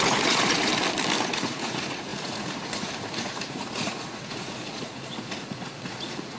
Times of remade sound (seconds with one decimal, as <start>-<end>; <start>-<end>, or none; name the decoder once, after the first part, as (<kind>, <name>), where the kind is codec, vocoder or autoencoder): 0.0-0.7 (vocoder, Vocos); 1.3-6.4